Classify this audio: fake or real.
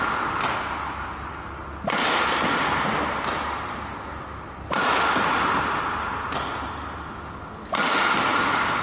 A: real